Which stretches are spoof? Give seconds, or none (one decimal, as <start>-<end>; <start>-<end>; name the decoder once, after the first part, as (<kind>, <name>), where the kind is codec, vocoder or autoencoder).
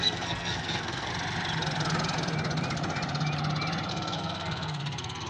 0.0-1.1 (codec, SNAC); 3.9-5.3